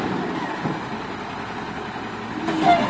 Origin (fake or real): real